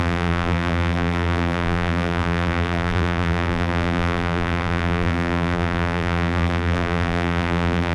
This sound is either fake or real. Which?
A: fake